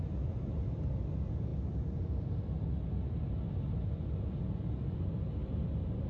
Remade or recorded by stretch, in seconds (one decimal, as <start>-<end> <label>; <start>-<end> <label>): 0.0-6.1 recorded